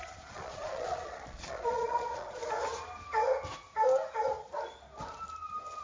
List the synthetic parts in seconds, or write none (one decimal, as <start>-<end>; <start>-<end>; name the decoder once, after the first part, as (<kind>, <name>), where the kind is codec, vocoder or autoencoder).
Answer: 0.0-2.4 (vocoder, Vocos)